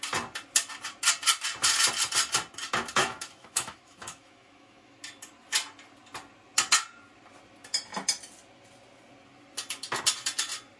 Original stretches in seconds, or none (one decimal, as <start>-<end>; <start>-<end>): 0.0-3.0; 5.0-10.8